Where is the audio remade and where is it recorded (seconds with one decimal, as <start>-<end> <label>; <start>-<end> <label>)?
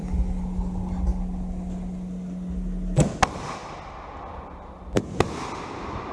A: 0.0-6.1 recorded